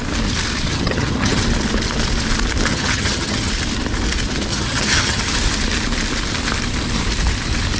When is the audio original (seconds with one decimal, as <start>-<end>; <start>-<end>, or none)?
0.0-0.7; 1.4-2.7; 3.5-4.5; 5.2-7.8